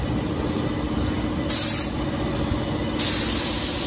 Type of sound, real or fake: real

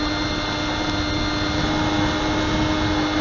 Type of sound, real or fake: real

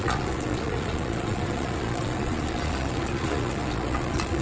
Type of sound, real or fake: fake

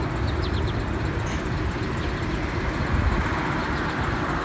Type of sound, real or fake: real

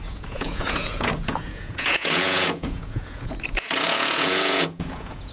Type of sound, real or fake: fake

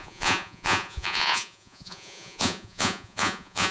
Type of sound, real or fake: fake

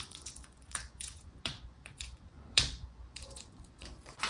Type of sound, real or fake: fake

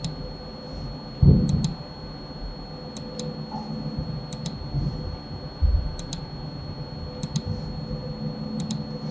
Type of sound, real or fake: real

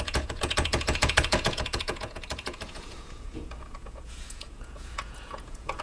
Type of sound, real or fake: fake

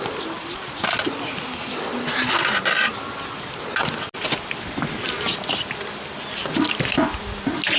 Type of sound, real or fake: real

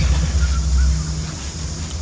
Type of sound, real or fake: real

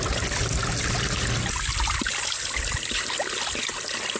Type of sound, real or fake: real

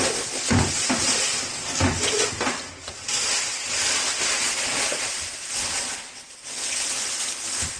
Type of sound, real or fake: real